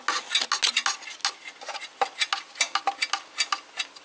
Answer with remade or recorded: recorded